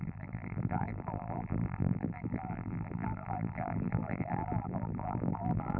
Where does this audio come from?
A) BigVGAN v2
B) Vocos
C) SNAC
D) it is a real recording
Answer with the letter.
A